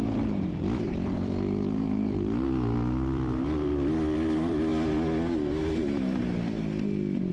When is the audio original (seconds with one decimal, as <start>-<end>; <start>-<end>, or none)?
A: 4.7-7.3

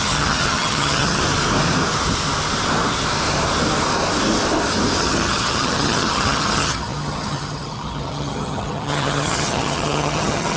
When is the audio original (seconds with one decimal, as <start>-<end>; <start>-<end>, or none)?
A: 1.2-5.0